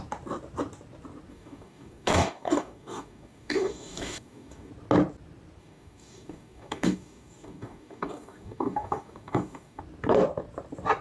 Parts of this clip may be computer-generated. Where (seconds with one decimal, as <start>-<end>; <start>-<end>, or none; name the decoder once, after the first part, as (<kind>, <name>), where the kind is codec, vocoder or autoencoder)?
1.3-4.7 (codec, DAC); 5.6-9.8